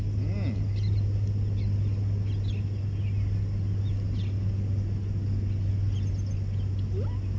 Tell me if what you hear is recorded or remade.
recorded